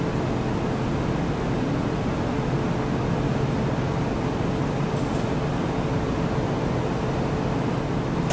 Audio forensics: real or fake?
real